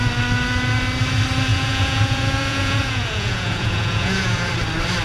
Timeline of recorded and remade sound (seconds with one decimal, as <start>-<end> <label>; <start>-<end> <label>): 0.0-1.5 recorded; 1.5-4.5 remade; 4.5-5.0 recorded